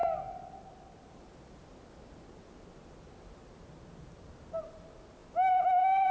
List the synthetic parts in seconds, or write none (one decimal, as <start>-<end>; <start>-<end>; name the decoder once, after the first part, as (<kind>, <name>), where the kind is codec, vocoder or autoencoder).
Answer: none